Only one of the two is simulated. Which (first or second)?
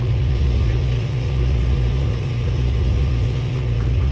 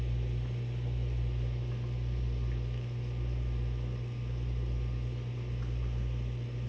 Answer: first